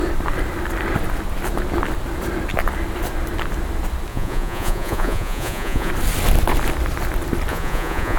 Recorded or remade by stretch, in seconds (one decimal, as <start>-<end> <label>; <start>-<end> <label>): 0.0-4.1 recorded; 4.1-5.9 remade; 5.9-7.5 recorded; 7.5-8.2 remade